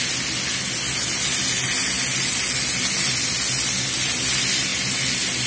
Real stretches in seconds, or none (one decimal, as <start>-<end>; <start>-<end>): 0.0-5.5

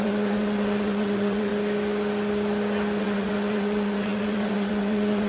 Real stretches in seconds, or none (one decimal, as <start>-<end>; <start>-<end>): 1.5-3.0

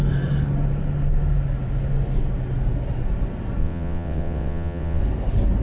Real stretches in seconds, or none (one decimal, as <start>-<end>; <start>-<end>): 0.0-3.6; 5.0-5.6

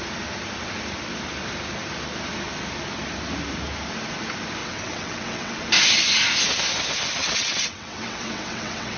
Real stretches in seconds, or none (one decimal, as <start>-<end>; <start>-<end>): 0.0-4.6; 5.7-7.2

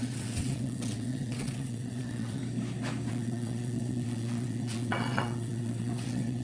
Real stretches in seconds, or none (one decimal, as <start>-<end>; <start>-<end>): 2.4-3.1

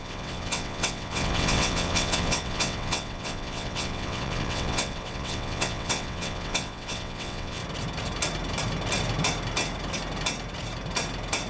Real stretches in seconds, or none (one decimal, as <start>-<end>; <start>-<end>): 7.6-11.5